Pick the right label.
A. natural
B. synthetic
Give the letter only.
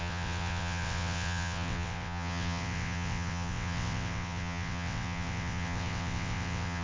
B